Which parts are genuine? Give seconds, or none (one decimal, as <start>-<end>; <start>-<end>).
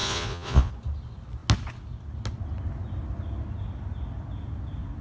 0.7-5.0